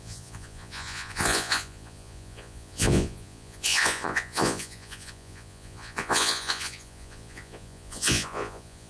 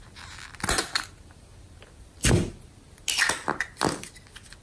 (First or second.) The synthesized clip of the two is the first